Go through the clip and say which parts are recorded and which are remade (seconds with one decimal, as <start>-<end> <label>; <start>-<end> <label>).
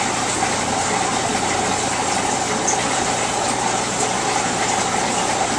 0.0-5.6 recorded